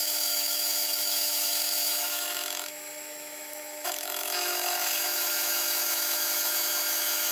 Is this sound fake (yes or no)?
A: yes